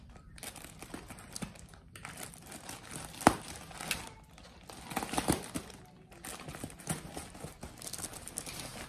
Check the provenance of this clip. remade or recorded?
recorded